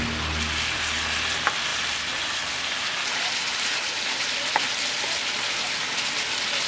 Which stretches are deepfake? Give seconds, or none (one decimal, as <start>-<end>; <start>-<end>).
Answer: 1.7-5.7